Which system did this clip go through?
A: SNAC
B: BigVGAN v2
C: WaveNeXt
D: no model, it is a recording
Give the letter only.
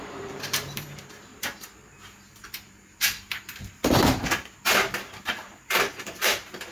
B